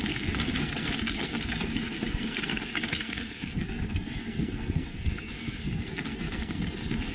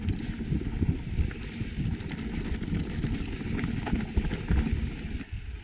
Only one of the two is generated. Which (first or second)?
first